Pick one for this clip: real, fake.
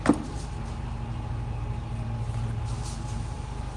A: real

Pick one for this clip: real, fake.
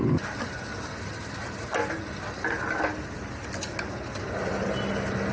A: real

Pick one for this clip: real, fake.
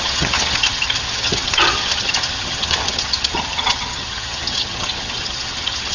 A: fake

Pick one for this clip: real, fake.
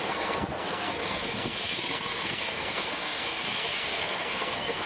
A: fake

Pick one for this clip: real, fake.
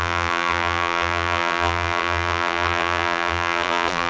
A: fake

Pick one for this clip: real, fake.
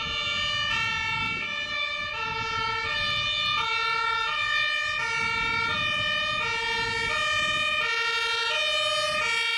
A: real